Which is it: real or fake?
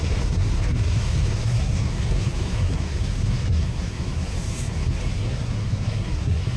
fake